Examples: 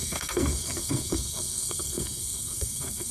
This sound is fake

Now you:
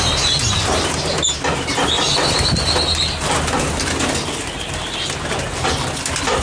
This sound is real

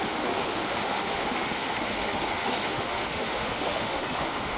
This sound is fake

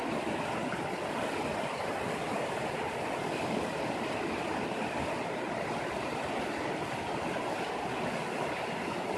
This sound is real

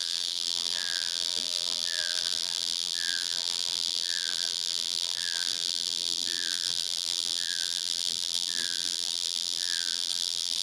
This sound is fake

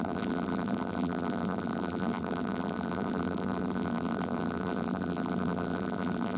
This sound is fake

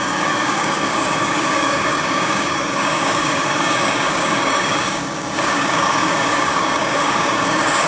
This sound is fake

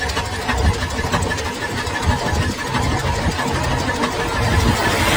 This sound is real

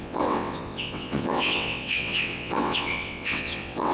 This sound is fake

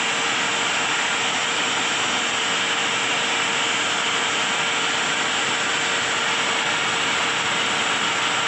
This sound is real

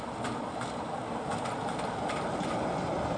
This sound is real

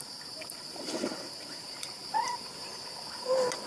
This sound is real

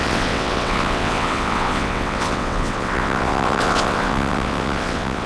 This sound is fake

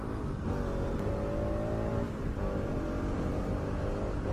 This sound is real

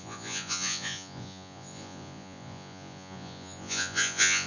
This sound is fake